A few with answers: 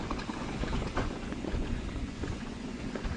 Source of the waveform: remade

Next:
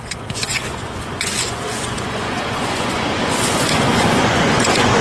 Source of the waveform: remade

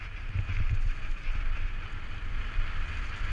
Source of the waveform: recorded